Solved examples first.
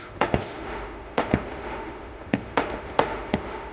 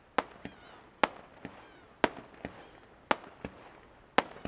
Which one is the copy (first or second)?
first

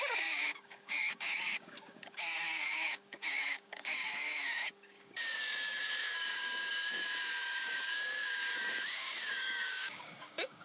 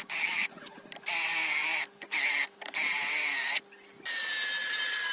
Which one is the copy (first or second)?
first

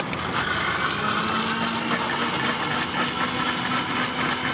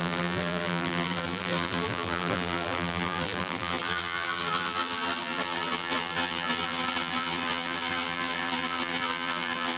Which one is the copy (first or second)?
second